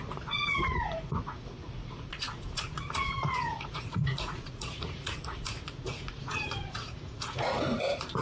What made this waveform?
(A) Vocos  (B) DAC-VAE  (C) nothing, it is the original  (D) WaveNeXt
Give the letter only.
A